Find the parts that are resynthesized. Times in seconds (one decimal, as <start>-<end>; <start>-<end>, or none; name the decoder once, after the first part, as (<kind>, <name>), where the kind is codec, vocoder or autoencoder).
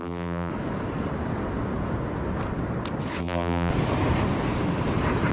0.0-0.5 (vocoder, BigVGAN v2); 3.2-3.7